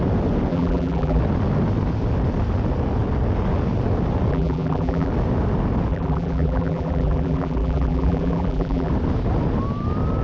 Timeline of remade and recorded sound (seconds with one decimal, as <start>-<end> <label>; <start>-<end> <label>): 0.0-0.5 recorded; 0.5-1.2 remade; 1.2-4.3 recorded; 4.3-5.1 remade; 5.1-5.9 recorded; 5.9-8.9 remade; 8.9-10.2 recorded